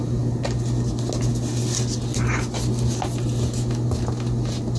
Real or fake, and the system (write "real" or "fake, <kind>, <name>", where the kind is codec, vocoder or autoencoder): real